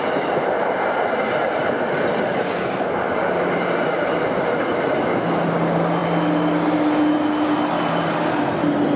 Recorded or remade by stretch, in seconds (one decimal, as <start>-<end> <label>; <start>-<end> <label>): 0.0-9.0 recorded